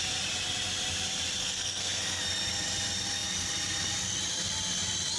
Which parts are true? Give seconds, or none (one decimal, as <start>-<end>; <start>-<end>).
0.0-1.4; 2.2-5.2